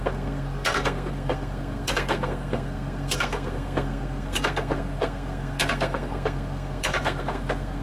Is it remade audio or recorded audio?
remade